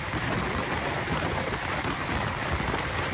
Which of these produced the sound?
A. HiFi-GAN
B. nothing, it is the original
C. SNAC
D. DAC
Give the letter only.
B